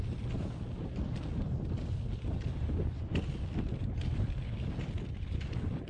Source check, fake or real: real